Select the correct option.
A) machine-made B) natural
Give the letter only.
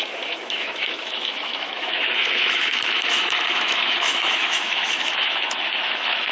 A